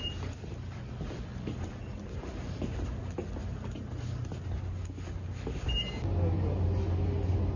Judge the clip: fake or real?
real